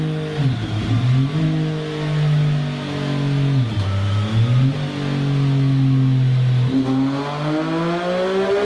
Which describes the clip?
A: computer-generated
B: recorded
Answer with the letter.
B